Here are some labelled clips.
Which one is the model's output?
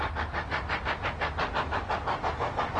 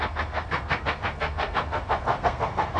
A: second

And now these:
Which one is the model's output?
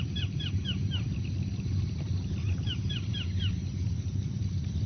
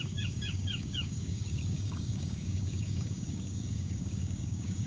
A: second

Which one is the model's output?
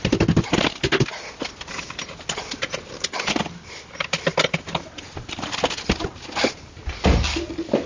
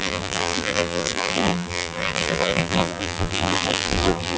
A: second